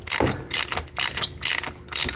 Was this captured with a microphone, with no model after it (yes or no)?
yes